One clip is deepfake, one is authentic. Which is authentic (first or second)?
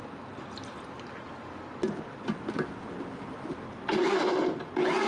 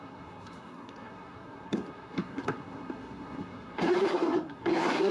first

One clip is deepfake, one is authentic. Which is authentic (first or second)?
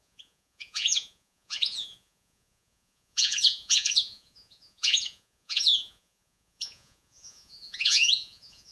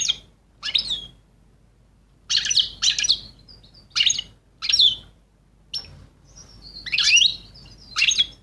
second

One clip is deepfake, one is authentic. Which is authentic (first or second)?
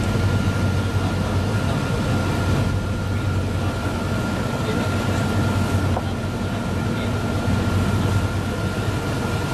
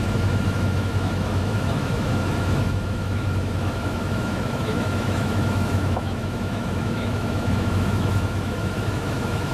first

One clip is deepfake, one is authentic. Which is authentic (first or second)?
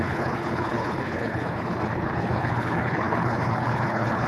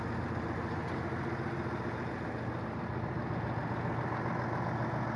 second